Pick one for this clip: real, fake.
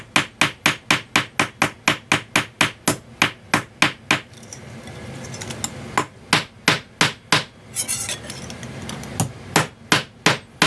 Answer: real